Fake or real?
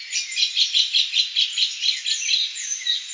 real